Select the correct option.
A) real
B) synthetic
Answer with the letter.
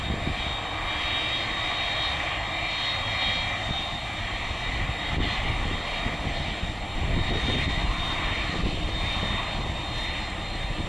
A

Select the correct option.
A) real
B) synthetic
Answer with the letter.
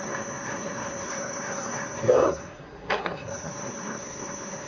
B